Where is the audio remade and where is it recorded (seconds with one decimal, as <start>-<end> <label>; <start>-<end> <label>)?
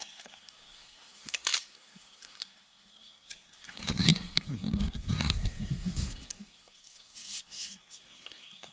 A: 0.0-8.7 remade